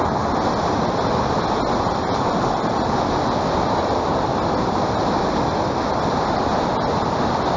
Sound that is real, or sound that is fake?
real